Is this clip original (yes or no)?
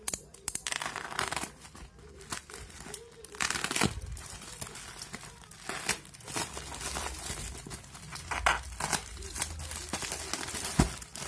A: yes